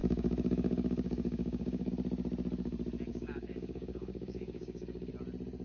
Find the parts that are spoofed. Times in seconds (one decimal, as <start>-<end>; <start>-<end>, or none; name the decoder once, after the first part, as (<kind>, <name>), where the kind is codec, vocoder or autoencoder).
0.0-1.9 (codec, DAC); 3.1-5.1